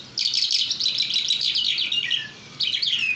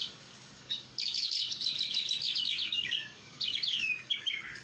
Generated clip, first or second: second